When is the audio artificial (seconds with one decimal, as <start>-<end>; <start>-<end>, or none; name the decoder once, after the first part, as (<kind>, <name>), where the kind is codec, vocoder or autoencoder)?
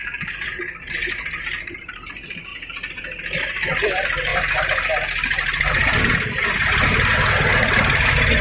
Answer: 0.0-2.5 (vocoder, BigVGAN v2); 3.4-4.3; 4.9-8.4